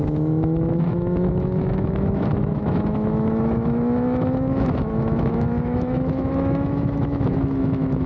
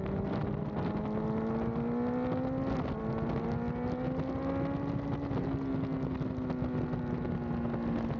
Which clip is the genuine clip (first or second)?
second